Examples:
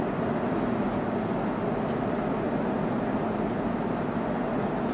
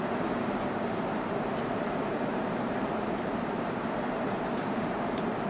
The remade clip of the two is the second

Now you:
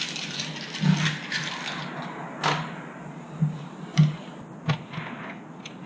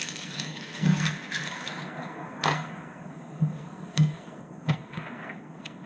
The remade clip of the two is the second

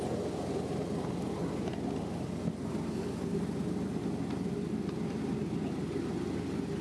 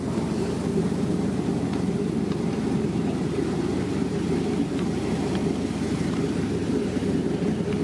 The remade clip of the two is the second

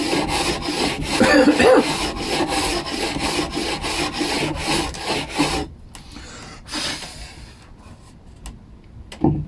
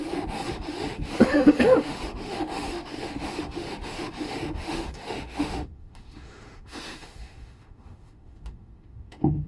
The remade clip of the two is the second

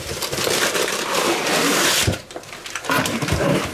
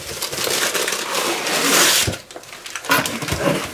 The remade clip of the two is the first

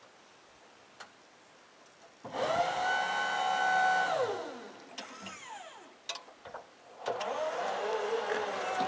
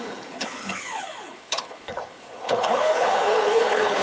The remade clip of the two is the second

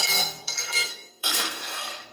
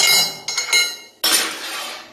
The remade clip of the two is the first